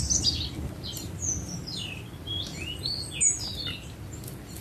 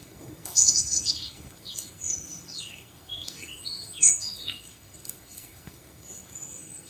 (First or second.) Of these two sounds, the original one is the first